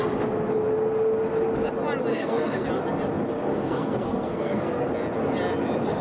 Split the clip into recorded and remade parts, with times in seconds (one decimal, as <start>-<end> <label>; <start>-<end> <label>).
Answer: 0.0-2.1 recorded; 2.1-2.7 remade; 2.7-3.5 recorded; 3.5-4.9 remade; 4.9-6.0 recorded